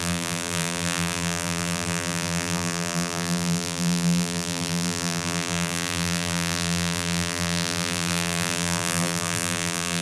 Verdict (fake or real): fake